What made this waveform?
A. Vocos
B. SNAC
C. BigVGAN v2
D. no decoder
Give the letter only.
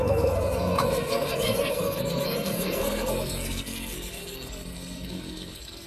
B